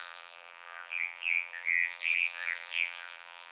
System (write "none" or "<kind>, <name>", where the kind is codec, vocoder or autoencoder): vocoder, BigVGAN v2